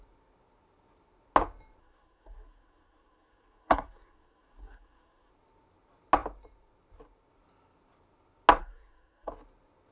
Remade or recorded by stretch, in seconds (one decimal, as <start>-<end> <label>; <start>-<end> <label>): 0.0-1.8 recorded; 1.8-5.3 remade; 5.3-8.6 recorded; 8.6-9.3 remade; 9.3-9.9 recorded